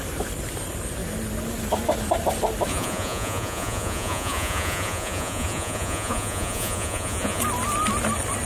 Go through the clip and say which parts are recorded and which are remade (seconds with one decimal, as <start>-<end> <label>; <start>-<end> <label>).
0.0-2.7 recorded; 2.7-7.4 remade; 7.4-8.5 recorded